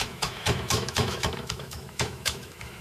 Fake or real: fake